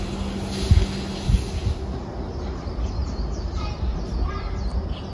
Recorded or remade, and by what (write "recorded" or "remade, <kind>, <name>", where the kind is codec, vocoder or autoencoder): recorded